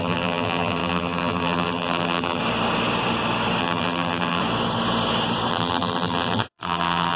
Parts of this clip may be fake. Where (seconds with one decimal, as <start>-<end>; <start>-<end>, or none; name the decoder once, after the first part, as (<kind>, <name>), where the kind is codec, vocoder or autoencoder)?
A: 0.0-2.4 (vocoder, BigVGAN v2); 3.6-4.4; 5.5-7.2